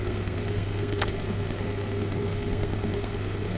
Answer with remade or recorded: remade